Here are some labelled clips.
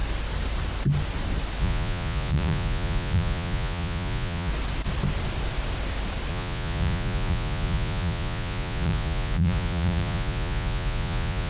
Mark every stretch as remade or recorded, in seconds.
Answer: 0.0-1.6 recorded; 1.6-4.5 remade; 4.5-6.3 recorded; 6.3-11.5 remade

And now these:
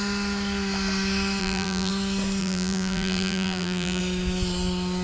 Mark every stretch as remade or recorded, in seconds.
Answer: 0.0-1.4 recorded; 1.4-1.9 remade; 1.9-2.4 recorded; 2.4-4.0 remade; 4.0-5.0 recorded

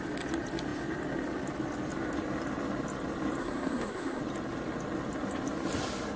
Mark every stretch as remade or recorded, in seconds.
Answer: 0.0-3.4 recorded; 3.4-4.2 remade; 4.2-6.2 recorded

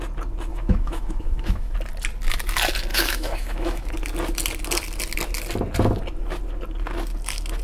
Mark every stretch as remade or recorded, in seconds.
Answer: 0.0-0.5 recorded; 0.5-1.7 remade; 1.7-2.9 recorded; 2.9-3.9 remade; 3.9-7.6 recorded

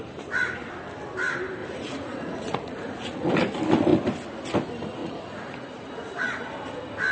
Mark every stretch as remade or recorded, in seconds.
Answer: 0.0-1.6 recorded; 1.6-3.3 remade; 3.3-5.0 recorded; 5.0-5.9 remade; 5.9-7.1 recorded

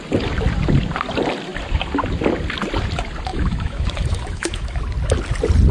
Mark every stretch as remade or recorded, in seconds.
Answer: 0.0-3.3 recorded; 3.3-4.8 remade; 4.8-5.7 recorded

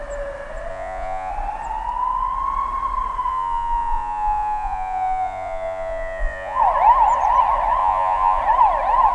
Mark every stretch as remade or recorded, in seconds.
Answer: 0.0-0.7 recorded; 0.7-1.3 remade; 1.3-3.3 recorded; 3.3-6.6 remade; 6.6-7.8 recorded; 7.8-8.4 remade; 8.4-9.1 recorded

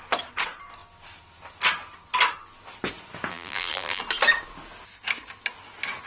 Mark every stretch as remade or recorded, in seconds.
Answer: 0.0-3.3 recorded; 3.3-4.0 remade; 4.0-6.1 recorded